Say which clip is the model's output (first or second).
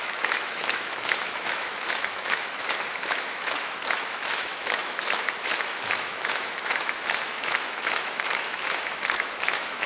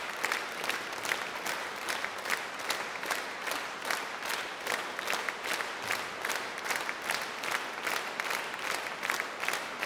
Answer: first